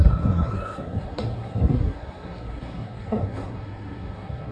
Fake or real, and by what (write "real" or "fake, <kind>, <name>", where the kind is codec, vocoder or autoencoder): fake, codec, SNAC